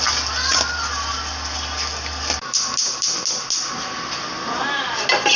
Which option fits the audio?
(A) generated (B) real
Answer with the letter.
B